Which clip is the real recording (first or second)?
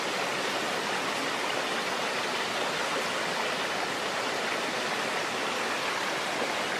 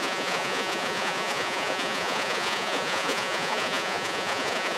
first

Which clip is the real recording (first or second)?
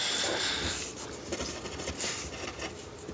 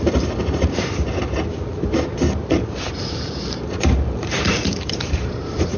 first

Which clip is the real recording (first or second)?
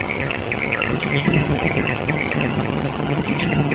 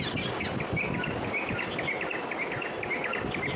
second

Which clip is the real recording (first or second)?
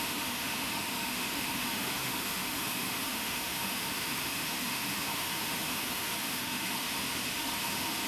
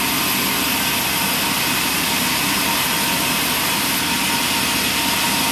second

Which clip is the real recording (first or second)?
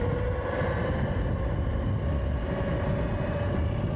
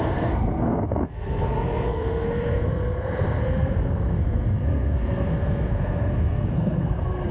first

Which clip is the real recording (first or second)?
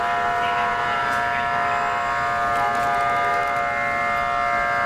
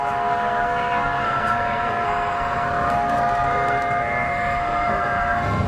first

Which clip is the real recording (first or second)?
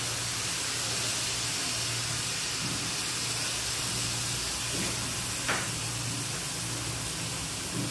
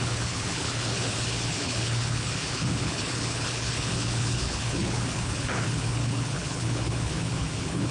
first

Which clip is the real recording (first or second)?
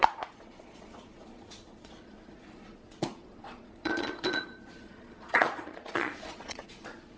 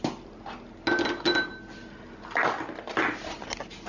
second